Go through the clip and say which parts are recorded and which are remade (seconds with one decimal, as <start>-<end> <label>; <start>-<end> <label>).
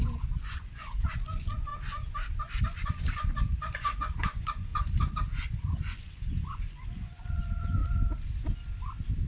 0.0-1.7 remade; 1.7-2.8 recorded; 2.8-4.7 remade; 4.7-5.4 recorded; 5.4-7.8 remade; 7.8-9.3 recorded